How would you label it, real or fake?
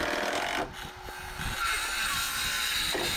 real